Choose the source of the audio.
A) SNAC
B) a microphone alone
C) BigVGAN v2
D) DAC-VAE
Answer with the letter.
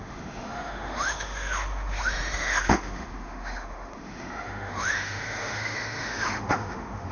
D